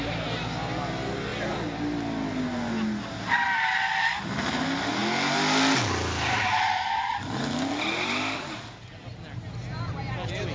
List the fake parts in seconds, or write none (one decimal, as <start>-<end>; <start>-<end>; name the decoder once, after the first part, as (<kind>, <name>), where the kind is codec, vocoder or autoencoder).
none